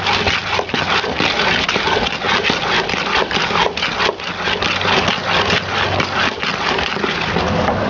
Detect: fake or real real